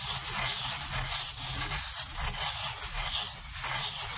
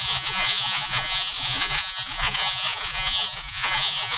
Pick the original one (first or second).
first